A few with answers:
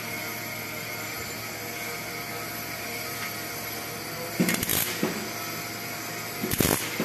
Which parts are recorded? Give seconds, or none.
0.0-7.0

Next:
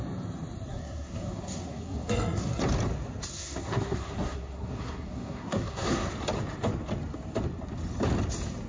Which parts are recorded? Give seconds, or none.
0.0-0.7; 2.6-3.3; 6.1-8.7

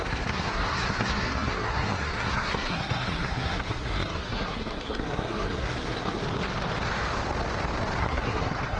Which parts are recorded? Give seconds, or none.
6.2-8.0

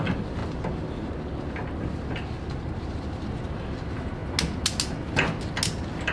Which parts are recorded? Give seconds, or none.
0.0-6.1

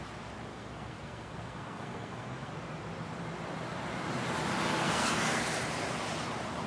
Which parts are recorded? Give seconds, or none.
0.0-0.5; 2.5-4.8; 5.4-6.7

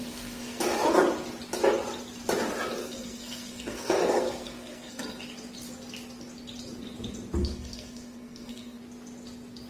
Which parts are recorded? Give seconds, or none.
0.6-2.8; 5.0-7.4; 8.8-9.7